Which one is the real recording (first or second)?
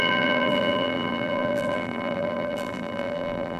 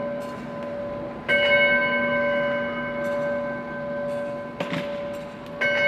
second